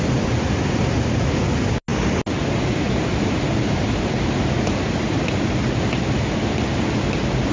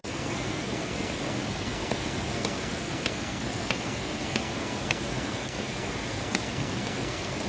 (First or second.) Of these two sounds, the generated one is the second